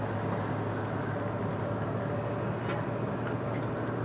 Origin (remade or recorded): recorded